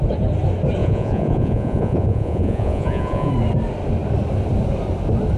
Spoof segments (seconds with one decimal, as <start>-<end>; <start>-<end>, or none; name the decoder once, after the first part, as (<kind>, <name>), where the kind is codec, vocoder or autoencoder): 0.8-3.3 (vocoder, Vocos)